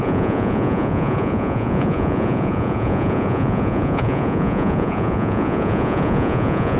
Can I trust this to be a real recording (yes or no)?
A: no